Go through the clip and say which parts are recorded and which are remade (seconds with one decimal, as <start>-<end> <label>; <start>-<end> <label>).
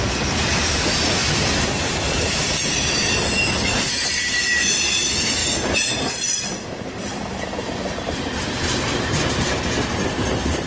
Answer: 0.0-1.2 recorded; 1.2-2.5 remade; 2.5-5.4 recorded; 5.4-10.7 remade